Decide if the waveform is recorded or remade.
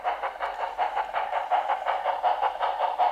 remade